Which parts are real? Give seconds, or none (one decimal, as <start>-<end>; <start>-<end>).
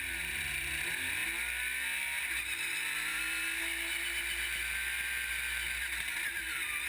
0.0-6.9